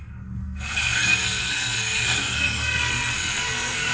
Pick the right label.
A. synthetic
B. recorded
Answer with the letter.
A